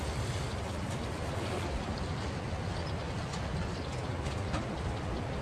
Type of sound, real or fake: real